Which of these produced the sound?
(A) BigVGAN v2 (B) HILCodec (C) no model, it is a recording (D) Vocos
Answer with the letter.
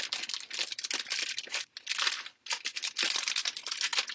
C